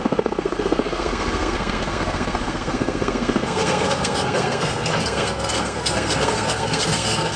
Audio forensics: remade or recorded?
remade